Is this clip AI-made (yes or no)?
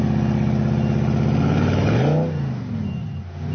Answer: no